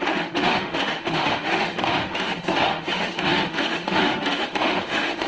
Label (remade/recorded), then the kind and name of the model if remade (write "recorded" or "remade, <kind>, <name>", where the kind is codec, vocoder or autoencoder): remade, autoencoder, DAC-VAE